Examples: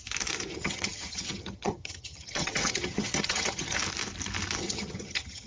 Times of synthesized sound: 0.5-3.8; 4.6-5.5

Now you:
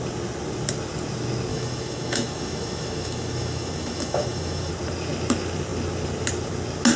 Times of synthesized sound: 1.5-4.7